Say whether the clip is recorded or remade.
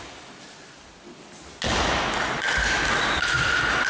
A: recorded